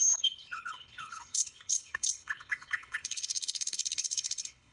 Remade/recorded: remade